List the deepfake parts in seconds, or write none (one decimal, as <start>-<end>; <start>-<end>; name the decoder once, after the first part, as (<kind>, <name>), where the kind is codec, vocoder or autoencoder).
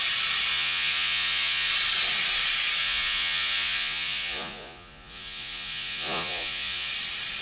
0.5-1.7 (vocoder, Vocos); 2.8-6.9